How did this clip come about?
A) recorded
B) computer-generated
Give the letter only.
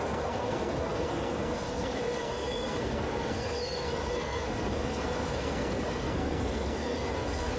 B